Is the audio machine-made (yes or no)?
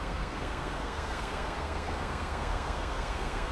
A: yes